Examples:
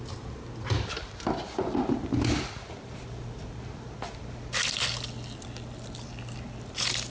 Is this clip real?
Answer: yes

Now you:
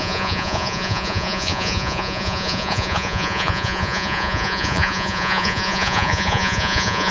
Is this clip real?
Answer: no